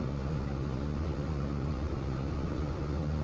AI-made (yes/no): yes